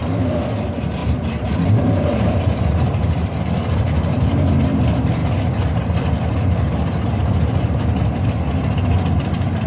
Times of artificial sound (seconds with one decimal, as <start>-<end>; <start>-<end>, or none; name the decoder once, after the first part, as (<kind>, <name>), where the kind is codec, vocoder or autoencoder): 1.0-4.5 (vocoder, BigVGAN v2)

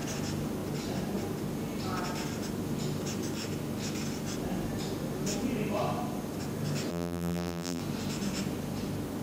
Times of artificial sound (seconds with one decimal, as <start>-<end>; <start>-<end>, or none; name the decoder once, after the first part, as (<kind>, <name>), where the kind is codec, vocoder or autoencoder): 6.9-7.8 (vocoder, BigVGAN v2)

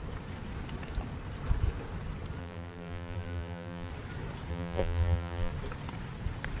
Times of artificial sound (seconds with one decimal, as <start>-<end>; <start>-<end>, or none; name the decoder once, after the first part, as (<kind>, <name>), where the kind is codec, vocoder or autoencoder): 2.4-3.9 (vocoder, BigVGAN v2); 4.5-5.5

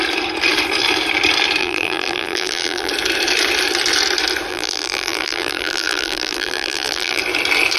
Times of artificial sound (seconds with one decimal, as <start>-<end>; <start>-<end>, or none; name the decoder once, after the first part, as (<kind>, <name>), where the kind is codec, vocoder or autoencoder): 1.6-2.9 (vocoder, BigVGAN v2); 4.5-7.2

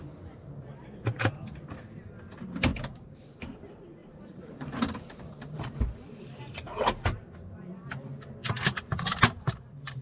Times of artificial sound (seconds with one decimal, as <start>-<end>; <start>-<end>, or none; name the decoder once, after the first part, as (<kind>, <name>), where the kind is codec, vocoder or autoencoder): 2.7-3.6 (vocoder, BigVGAN v2); 4.0-7.8

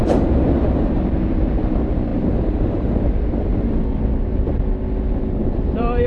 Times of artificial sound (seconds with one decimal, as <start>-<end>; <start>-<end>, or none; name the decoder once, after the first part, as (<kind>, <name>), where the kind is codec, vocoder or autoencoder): 0.0-1.0 (vocoder, BigVGAN v2); 2.1-3.0; 5.4-6.1

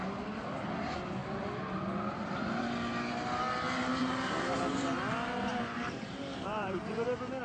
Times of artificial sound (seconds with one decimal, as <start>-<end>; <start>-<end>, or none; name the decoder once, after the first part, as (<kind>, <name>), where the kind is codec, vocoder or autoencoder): 4.0-4.6 (vocoder, BigVGAN v2); 5.5-6.8

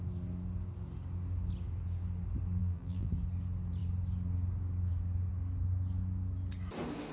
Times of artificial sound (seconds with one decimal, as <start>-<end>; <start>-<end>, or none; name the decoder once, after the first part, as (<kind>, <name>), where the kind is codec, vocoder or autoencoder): 2.6-3.1 (vocoder, BigVGAN v2)